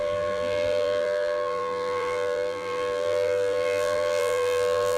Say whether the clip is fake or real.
fake